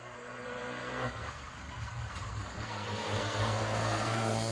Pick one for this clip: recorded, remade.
remade